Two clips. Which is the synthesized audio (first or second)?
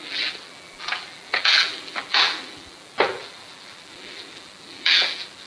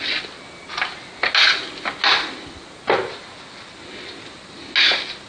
first